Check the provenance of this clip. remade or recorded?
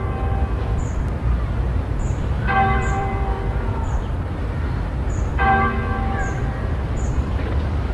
remade